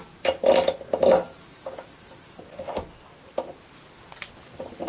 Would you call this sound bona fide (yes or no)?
yes